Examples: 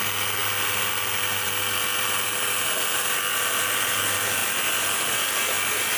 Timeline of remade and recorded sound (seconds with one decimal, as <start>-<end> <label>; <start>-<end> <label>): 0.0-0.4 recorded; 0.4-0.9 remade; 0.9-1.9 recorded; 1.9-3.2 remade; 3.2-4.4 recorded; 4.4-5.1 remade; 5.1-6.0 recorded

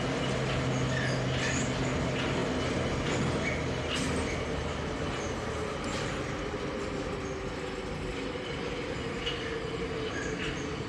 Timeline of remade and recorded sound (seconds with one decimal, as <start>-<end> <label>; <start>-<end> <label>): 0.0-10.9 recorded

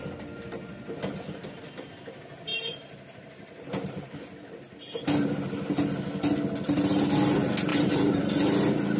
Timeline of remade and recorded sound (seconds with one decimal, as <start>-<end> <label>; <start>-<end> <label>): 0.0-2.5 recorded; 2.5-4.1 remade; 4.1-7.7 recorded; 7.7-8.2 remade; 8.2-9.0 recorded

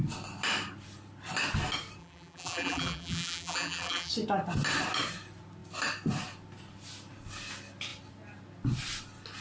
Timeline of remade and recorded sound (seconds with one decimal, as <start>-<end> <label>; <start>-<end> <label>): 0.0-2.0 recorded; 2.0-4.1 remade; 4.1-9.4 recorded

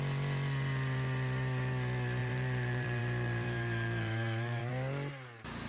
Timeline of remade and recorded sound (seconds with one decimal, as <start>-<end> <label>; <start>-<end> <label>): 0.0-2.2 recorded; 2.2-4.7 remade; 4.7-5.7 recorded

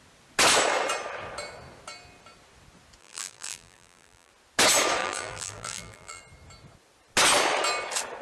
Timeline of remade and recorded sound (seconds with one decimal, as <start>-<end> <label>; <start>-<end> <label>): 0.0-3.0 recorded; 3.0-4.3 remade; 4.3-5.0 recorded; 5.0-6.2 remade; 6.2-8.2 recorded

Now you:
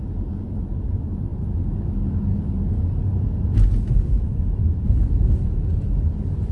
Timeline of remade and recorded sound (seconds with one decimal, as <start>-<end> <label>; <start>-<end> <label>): 0.0-3.1 recorded; 3.1-6.5 remade